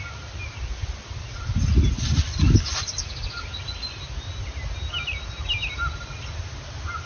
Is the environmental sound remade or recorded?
recorded